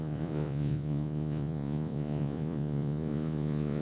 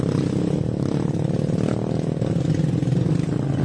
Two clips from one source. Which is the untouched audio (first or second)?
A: second